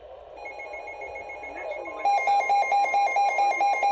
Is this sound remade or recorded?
recorded